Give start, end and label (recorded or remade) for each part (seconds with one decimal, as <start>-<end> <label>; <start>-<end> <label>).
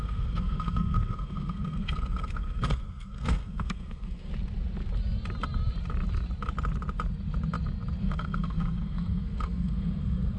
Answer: 0.0-4.3 remade; 4.3-8.0 recorded; 8.0-10.4 remade